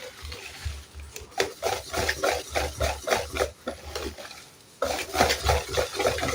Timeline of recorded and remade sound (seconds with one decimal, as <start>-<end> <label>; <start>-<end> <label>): 0.0-6.3 recorded